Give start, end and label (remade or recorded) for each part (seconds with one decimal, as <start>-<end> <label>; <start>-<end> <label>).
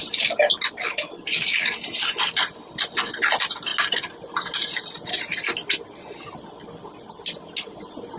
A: 0.0-8.2 recorded